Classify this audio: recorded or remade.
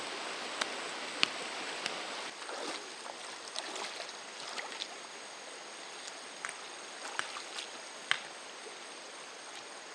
recorded